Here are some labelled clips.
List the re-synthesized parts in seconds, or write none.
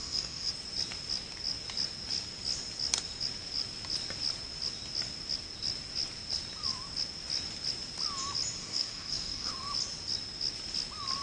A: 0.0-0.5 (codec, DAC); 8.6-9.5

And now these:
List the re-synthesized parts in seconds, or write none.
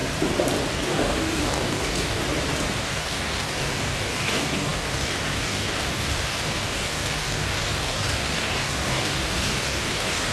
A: 0.7-2.2 (codec, DAC); 2.8-10.3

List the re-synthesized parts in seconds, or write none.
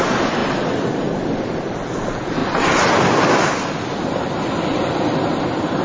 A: none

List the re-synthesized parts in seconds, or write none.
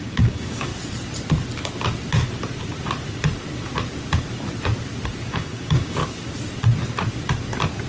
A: 0.0-0.7 (codec, DAC); 5.3-6.0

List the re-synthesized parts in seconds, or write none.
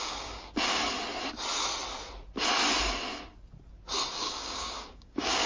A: 0.0-0.8 (codec, DAC); 4.1-5.5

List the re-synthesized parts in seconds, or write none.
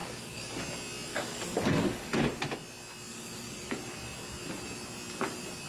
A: 0.0-0.6 (codec, DAC); 1.1-2.2; 3.1-3.7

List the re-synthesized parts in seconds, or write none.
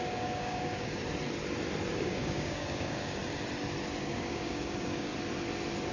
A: 0.0-1.0 (codec, DAC); 1.9-3.2; 4.0-5.1